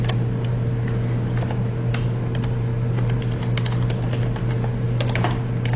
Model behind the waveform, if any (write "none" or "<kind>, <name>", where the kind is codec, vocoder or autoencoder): none